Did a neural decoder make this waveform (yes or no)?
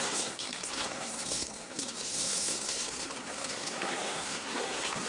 yes